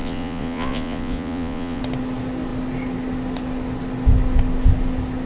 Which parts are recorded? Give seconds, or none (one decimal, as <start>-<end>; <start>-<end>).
1.8-5.3